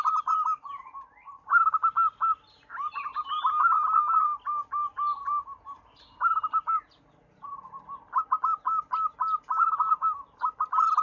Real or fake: real